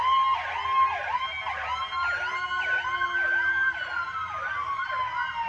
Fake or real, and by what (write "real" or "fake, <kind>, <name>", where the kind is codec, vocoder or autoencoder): real